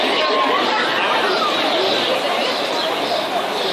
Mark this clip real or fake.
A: real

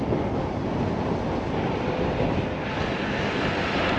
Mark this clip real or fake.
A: real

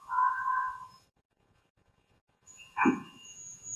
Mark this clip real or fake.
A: fake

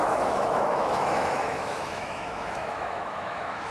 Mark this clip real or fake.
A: fake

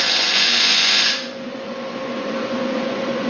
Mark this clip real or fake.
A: fake